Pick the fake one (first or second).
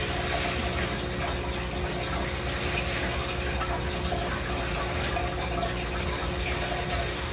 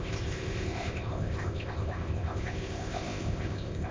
second